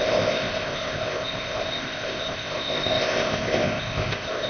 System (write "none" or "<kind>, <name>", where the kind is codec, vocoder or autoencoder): codec, ZipCodec